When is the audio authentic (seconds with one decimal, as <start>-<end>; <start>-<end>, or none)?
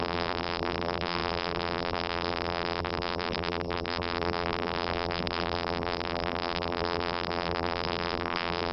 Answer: none